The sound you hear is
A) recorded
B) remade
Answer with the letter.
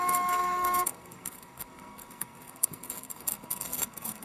B